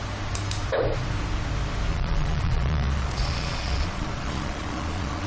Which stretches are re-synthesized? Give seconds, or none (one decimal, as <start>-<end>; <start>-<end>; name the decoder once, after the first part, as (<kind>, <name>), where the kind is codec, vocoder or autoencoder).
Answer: 1.9-5.3 (vocoder, Vocos)

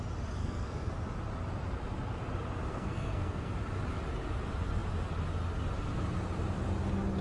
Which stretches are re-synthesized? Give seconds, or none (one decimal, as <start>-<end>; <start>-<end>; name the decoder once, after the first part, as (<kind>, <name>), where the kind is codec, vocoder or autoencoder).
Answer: 0.4-0.9 (codec, SNAC); 2.7-3.5